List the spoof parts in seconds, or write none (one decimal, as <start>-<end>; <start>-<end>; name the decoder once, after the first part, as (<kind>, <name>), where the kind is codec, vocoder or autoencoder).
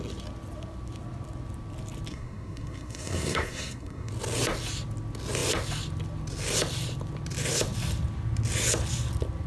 2.1-4.1 (codec, SNAC)